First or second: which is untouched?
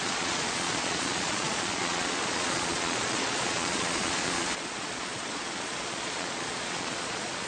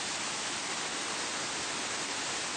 second